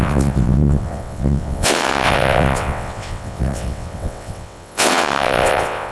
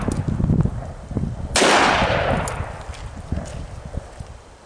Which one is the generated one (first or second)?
first